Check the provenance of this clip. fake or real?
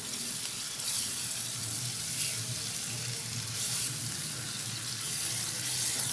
real